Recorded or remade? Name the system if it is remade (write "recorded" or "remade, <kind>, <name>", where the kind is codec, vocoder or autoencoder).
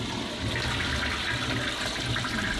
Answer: recorded